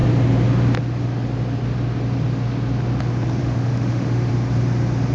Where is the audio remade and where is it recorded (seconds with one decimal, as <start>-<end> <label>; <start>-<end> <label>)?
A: 0.0-3.4 recorded; 3.4-4.3 remade; 4.3-5.1 recorded

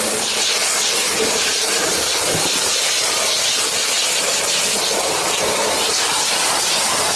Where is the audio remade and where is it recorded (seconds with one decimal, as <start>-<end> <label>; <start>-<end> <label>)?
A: 0.0-7.2 recorded

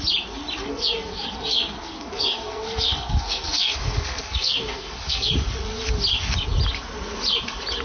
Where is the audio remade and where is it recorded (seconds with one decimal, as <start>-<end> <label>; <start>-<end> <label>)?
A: 0.0-0.6 recorded; 0.6-5.3 remade; 5.3-7.8 recorded

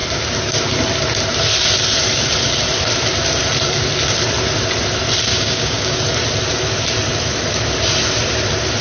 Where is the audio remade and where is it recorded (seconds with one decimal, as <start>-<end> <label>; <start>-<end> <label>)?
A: 0.0-5.3 recorded; 5.3-6.0 remade; 6.0-8.8 recorded

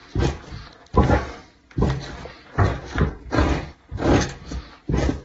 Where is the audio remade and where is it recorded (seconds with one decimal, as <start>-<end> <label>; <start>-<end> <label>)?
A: 0.0-2.7 recorded; 2.7-4.7 remade; 4.7-5.2 recorded

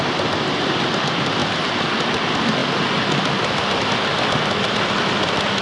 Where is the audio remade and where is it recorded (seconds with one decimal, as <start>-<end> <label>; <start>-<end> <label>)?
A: 0.0-5.6 recorded

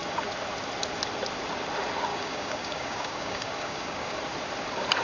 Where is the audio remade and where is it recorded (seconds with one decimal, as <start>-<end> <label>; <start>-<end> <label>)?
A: 0.0-2.1 recorded; 2.1-4.2 remade; 4.2-5.0 recorded

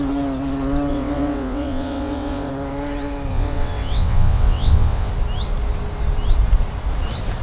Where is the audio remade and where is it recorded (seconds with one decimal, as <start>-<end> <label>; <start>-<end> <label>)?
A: 0.0-0.9 recorded; 0.9-2.5 remade; 2.5-3.3 recorded; 3.3-5.1 remade; 5.1-7.4 recorded